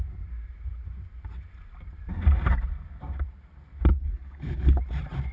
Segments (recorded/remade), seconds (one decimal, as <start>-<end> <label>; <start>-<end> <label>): 0.0-3.9 recorded; 3.9-4.8 remade; 4.8-5.3 recorded